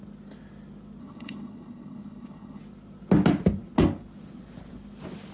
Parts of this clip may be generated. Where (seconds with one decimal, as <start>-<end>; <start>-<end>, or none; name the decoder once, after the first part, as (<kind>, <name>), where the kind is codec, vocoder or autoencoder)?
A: 1.0-2.6 (codec, HILCodec)

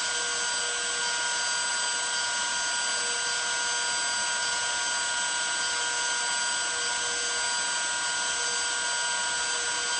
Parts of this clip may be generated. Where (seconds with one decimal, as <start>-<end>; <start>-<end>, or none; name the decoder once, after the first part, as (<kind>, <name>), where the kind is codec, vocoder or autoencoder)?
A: none

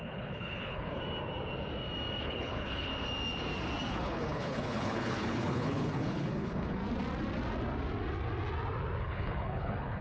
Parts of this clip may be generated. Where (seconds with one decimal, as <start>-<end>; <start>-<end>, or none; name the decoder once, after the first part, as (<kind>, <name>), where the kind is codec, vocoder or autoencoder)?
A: 0.0-1.0 (codec, HILCodec); 2.2-2.9; 3.9-6.8; 9.0-10.0

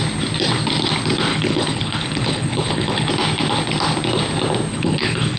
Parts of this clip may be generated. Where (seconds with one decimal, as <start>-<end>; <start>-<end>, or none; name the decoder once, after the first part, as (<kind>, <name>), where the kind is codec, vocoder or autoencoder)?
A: 1.3-3.1 (codec, HILCodec); 4.7-5.4

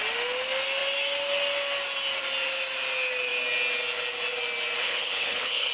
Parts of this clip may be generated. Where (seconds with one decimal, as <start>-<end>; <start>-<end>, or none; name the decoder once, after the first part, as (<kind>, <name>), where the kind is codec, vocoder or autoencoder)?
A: 4.8-5.7 (codec, HILCodec)

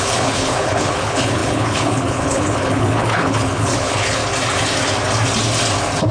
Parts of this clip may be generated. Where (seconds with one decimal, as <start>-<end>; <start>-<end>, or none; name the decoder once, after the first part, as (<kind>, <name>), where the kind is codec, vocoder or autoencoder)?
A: 0.0-4.2 (codec, HILCodec)

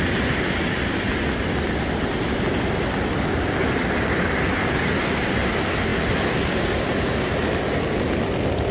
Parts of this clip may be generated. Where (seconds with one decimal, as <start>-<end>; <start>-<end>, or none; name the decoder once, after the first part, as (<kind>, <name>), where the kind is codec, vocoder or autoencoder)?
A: none

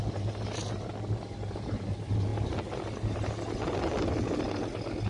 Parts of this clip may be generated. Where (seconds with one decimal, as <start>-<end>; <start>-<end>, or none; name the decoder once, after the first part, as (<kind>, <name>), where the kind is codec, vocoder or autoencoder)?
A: none